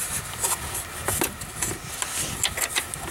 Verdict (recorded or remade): recorded